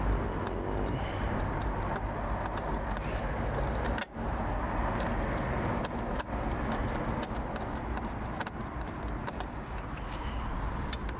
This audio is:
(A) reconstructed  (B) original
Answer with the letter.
B